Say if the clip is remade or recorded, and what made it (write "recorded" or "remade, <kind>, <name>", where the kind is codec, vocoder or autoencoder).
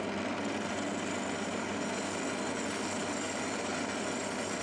recorded